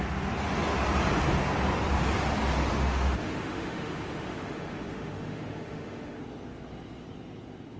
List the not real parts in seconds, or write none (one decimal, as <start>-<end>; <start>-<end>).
2.7-6.2